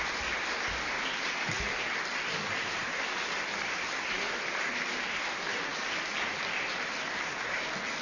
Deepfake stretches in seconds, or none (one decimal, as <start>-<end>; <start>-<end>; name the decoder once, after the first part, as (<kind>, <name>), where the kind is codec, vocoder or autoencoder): none

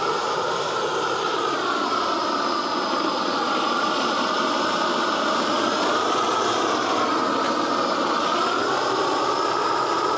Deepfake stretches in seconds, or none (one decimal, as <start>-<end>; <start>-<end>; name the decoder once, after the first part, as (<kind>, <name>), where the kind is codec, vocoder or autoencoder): none

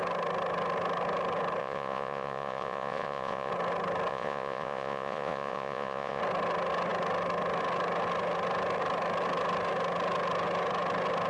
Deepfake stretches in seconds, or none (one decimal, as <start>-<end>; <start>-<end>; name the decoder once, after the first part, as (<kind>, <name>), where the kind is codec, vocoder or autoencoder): 1.6-3.5 (vocoder, Vocos); 4.1-6.2

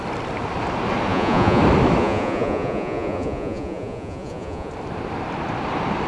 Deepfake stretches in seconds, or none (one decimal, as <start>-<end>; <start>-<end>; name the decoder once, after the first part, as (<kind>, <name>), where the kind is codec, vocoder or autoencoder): 1.1-1.6 (vocoder, Vocos); 2.0-4.7